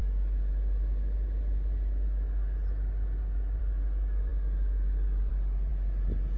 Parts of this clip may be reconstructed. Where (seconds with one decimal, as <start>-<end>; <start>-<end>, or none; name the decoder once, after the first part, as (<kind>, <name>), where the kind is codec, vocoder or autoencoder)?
none